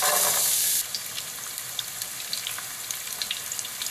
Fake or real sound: real